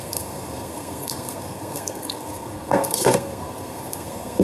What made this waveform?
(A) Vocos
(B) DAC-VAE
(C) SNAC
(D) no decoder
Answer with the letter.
C